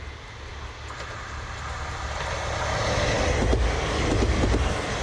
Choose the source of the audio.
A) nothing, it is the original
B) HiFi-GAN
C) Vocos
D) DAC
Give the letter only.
A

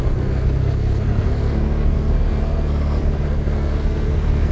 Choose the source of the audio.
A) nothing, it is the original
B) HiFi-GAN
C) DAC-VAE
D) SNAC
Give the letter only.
D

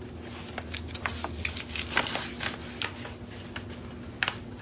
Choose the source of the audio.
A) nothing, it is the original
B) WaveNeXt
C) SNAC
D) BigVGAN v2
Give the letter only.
A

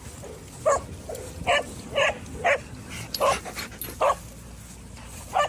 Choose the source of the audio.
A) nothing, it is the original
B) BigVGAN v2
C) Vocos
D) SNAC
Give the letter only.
A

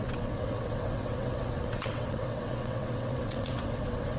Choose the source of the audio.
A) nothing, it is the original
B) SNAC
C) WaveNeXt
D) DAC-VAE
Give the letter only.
C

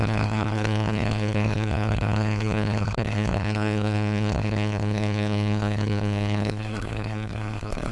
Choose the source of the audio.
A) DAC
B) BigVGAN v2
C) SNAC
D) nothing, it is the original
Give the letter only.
C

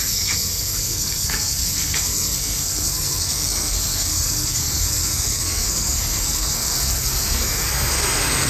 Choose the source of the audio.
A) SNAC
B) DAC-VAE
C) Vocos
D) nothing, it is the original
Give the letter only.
A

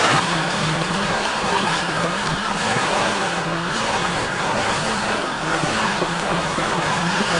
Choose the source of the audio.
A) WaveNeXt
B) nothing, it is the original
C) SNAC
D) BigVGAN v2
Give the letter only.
C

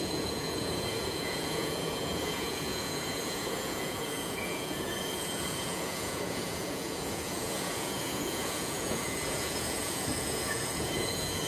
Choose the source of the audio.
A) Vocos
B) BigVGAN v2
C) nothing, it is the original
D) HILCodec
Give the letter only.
A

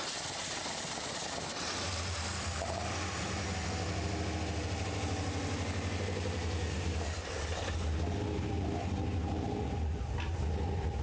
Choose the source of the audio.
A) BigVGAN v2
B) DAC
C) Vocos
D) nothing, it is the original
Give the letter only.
D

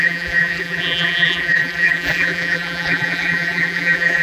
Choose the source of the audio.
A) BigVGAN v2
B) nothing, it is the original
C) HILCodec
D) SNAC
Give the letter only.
A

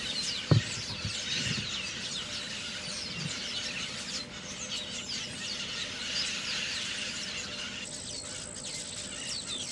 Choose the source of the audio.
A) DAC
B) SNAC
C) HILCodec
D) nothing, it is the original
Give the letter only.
D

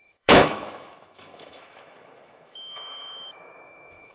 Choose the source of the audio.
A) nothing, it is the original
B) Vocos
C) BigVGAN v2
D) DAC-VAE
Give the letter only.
D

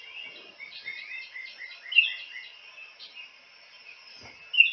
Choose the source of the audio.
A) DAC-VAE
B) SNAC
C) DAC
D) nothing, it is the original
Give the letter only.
D